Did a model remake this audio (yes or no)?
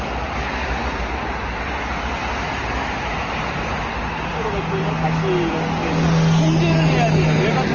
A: no